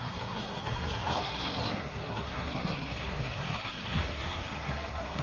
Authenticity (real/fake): fake